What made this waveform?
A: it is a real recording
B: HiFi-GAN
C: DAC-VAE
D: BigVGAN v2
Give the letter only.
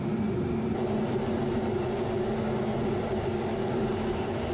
A